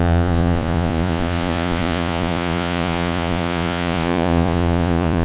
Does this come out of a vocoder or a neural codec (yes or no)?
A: yes